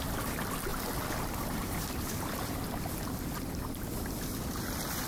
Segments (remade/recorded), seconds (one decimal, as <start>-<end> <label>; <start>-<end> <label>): 0.0-5.1 recorded